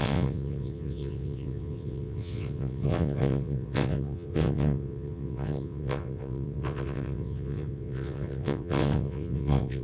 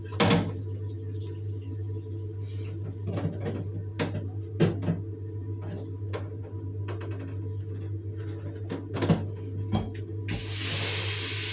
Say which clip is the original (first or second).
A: second